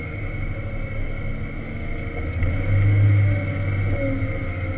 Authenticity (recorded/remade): recorded